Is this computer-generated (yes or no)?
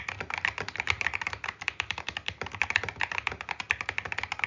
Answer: no